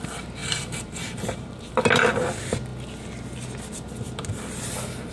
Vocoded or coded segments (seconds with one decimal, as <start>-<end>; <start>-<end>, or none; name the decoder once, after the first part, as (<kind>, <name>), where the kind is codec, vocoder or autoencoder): 0.4-1.7 (vocoder, BigVGAN v2)